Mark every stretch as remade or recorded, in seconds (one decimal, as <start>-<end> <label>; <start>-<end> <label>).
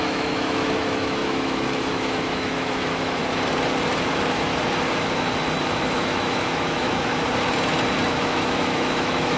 0.0-3.2 remade; 3.2-4.1 recorded; 4.1-4.5 remade; 4.5-5.6 recorded; 5.6-7.1 remade; 7.1-8.1 recorded; 8.1-9.4 remade